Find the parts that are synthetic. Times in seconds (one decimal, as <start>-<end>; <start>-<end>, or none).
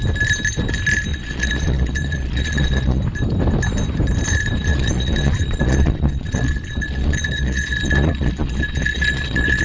1.1-3.0; 4.7-9.6